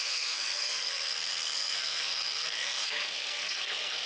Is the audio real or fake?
fake